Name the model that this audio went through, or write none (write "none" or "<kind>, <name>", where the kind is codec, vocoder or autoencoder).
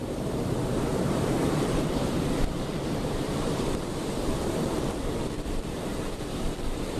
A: vocoder, BigVGAN v2